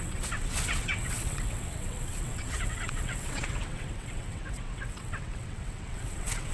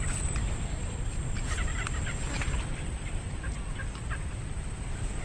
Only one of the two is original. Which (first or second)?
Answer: second